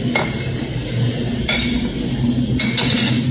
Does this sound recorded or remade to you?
recorded